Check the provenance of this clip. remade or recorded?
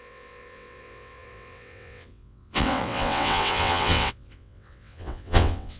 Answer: remade